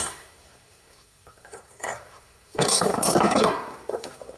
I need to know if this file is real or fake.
fake